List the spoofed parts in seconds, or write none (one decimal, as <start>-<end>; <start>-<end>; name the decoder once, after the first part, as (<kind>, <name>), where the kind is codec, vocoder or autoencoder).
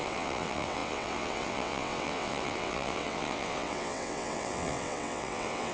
0.0-5.7 (vocoder, WaveNeXt)